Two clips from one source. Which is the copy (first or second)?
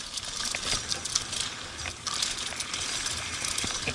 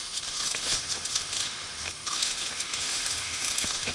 second